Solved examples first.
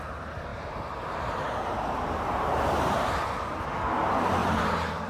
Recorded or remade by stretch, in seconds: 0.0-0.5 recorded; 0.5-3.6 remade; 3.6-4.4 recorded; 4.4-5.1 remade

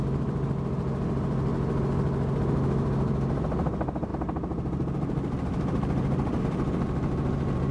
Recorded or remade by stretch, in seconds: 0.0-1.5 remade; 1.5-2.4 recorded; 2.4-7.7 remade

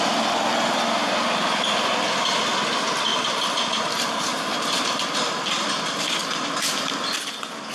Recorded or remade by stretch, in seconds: 0.0-7.7 recorded

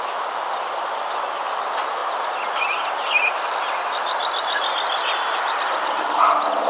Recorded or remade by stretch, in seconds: 0.0-6.7 recorded

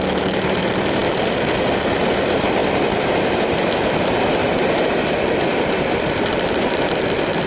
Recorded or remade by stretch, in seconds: 0.0-4.4 recorded; 4.4-6.8 remade; 6.8-7.5 recorded